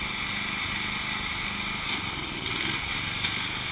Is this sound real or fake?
real